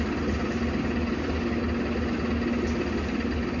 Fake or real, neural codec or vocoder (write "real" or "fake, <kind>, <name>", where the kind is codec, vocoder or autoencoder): real